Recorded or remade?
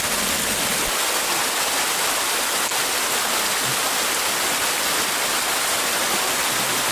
recorded